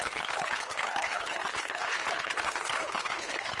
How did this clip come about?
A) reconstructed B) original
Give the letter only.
A